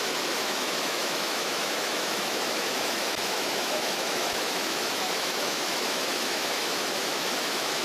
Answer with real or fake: fake